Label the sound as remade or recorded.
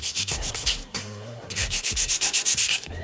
remade